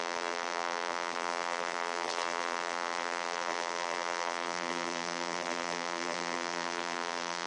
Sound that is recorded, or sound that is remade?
remade